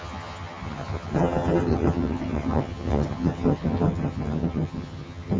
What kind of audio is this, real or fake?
fake